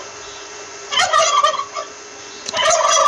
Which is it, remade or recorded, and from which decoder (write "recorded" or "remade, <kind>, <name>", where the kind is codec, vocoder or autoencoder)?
remade, vocoder, Vocos